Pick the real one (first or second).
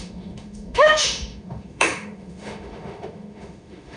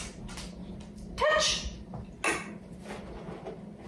second